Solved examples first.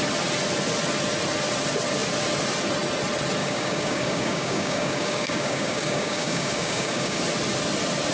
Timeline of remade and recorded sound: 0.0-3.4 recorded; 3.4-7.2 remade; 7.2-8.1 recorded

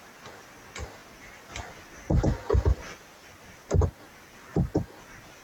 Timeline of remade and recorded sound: 0.0-5.4 recorded

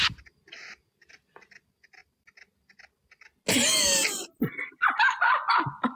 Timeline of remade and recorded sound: 0.0-6.0 recorded